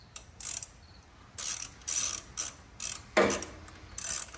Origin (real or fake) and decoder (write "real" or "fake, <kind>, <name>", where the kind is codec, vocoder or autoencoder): real